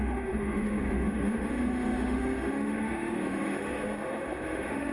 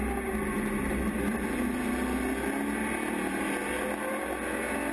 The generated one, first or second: first